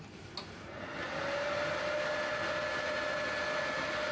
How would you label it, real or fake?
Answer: real